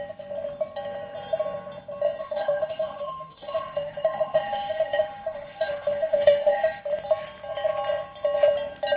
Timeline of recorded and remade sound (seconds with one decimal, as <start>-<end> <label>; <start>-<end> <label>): 0.0-2.2 recorded; 2.2-6.8 remade; 6.8-9.0 recorded